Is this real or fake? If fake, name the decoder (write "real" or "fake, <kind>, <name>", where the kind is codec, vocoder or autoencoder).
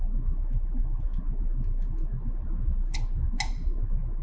real